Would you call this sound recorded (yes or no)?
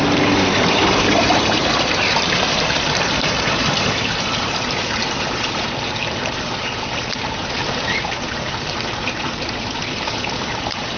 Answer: no